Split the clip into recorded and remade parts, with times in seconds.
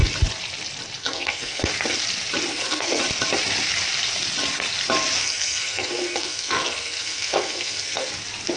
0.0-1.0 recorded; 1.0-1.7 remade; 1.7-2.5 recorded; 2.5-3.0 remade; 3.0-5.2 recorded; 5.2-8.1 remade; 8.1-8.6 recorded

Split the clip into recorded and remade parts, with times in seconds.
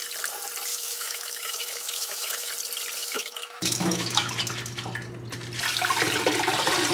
0.0-0.7 recorded; 0.7-2.5 remade; 2.5-3.0 recorded; 3.0-4.3 remade; 4.3-6.9 recorded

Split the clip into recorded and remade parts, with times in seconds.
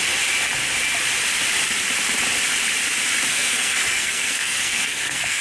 0.0-3.3 recorded; 3.3-5.4 remade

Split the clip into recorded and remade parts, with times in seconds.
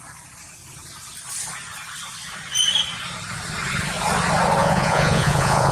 0.0-4.6 recorded; 4.6-5.7 remade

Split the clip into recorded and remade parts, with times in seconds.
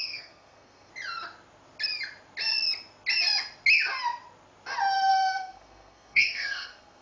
0.0-0.9 remade; 0.9-5.1 recorded; 5.1-7.0 remade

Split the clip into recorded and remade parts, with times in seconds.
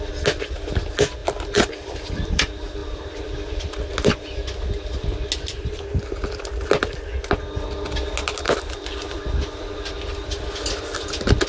0.0-1.2 recorded; 1.2-2.4 remade; 2.4-11.5 recorded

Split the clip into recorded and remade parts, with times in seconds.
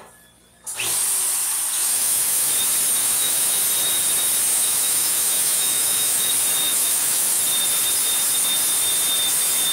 0.0-1.8 recorded; 1.8-2.5 remade; 2.5-3.0 recorded; 3.0-3.6 remade; 3.6-4.5 recorded; 4.5-6.3 remade; 6.3-6.7 recorded; 6.7-7.4 remade; 7.4-9.7 recorded